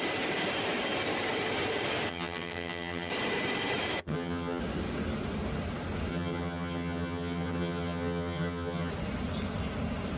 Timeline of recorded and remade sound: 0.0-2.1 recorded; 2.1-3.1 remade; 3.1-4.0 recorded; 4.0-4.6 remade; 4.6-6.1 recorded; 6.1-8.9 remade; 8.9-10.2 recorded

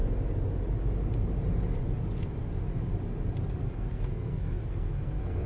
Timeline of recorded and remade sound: 0.0-3.6 recorded; 3.6-5.5 remade

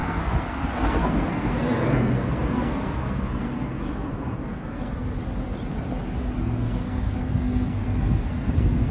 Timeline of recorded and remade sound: 0.0-5.2 remade; 5.2-6.4 recorded; 6.4-8.9 remade

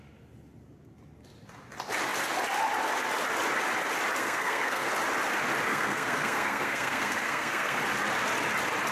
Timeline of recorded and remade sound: 0.0-4.2 recorded; 4.2-4.9 remade; 4.9-5.7 recorded; 5.7-7.8 remade; 7.8-8.9 recorded